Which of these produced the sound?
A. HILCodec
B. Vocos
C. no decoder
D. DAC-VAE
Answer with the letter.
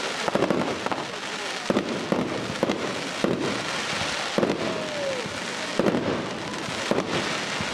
C